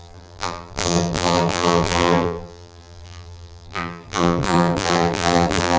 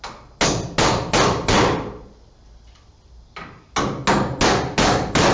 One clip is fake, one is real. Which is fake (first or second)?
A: first